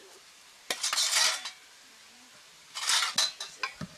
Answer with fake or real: real